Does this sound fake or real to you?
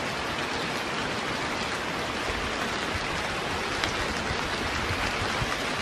real